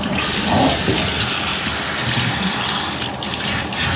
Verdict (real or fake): real